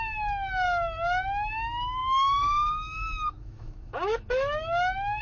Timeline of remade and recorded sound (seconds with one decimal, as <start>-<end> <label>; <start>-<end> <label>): 0.0-5.2 remade